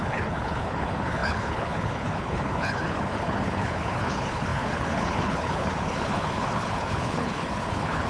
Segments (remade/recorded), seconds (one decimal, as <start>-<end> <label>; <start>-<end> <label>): 0.0-8.1 remade